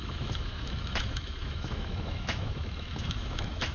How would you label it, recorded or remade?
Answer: remade